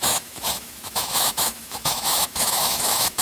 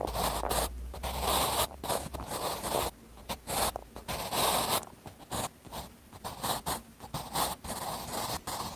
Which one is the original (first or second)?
second